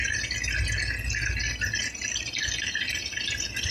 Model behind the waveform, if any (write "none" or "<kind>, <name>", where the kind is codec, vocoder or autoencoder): none